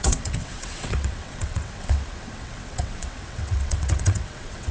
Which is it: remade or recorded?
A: remade